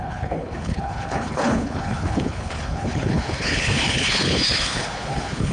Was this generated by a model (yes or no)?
yes